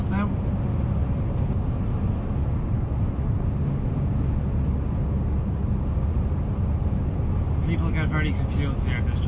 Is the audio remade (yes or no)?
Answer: no